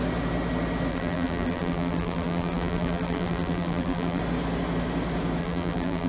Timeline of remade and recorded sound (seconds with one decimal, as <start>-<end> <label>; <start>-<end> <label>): 0.0-0.9 recorded; 0.9-4.2 remade; 4.2-5.4 recorded; 5.4-6.1 remade